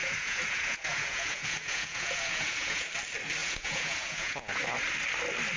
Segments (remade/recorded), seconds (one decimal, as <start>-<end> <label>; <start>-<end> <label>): 0.0-2.9 remade; 2.9-3.4 recorded; 3.4-4.6 remade; 4.6-5.6 recorded